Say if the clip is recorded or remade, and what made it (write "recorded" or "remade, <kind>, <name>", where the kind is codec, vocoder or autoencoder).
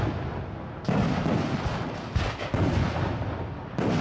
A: recorded